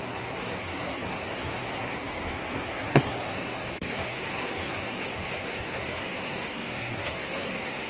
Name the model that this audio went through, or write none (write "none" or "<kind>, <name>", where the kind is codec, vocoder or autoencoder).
codec, SNAC